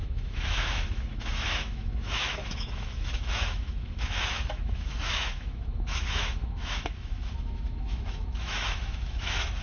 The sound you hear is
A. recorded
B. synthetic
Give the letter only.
B